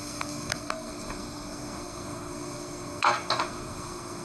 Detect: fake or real fake